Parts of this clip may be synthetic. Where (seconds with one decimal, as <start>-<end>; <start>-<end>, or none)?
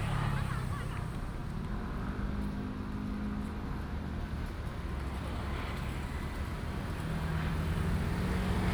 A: none